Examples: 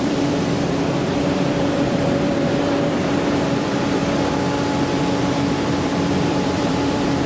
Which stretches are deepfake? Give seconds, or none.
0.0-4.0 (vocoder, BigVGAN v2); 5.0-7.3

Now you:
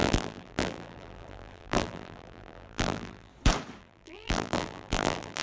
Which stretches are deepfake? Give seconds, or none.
0.0-3.3 (vocoder, BigVGAN v2); 3.8-5.4